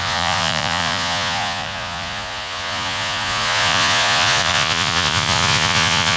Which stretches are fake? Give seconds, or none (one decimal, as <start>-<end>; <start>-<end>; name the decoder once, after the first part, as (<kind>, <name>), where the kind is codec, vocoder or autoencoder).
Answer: 0.0-6.2 (vocoder, Vocos)